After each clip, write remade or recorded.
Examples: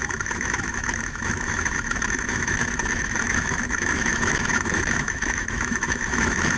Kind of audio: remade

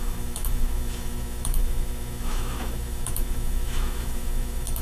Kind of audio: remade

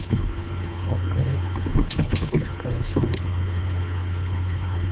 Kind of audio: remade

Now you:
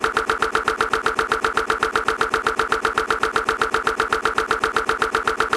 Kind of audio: recorded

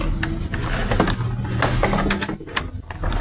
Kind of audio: recorded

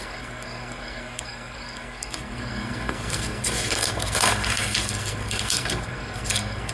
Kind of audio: remade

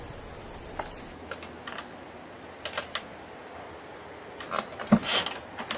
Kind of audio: recorded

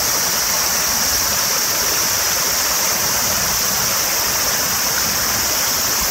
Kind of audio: recorded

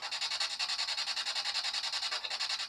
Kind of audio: recorded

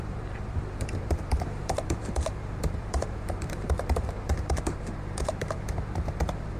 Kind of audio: remade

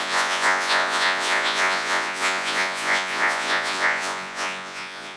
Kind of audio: remade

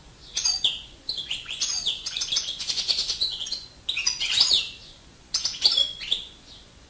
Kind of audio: remade